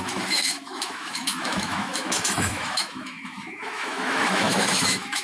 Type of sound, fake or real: fake